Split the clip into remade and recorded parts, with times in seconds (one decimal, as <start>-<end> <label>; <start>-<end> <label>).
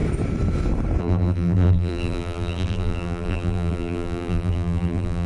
0.0-1.0 recorded; 1.0-5.3 remade